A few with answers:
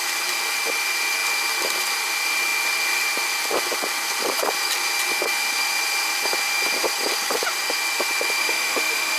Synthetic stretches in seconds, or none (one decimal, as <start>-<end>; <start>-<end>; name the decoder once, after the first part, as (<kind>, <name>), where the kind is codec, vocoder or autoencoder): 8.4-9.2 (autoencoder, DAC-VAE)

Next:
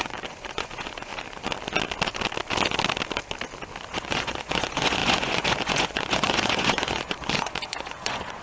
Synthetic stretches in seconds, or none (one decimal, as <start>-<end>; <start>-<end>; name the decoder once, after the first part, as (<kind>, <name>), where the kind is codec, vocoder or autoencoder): 0.0-1.1 (vocoder, Vocos); 3.9-8.4

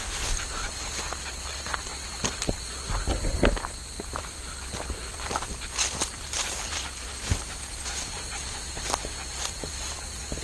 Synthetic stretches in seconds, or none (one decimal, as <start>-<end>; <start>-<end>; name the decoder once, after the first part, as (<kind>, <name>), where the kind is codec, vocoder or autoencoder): none